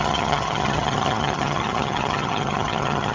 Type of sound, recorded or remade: remade